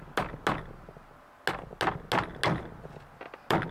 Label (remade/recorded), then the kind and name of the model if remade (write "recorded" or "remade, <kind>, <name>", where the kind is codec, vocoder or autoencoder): recorded